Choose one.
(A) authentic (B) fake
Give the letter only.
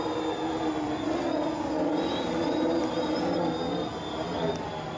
A